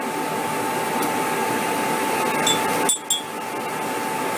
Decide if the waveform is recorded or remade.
recorded